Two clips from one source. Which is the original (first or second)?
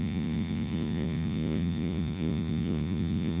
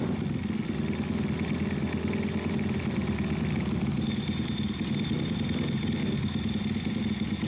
second